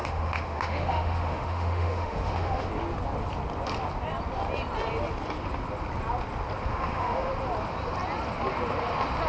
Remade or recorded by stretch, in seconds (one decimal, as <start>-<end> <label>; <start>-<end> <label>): 0.0-2.7 remade; 2.7-6.7 recorded; 6.7-7.3 remade; 7.3-9.3 recorded